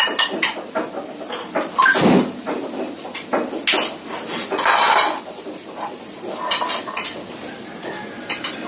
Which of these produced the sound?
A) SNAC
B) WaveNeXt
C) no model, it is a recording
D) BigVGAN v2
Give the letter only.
C